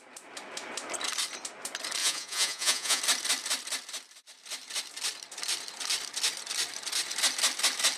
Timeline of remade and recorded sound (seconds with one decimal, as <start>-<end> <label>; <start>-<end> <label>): 0.0-2.0 recorded; 2.0-3.0 remade; 3.0-8.0 recorded